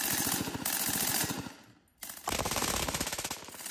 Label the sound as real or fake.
real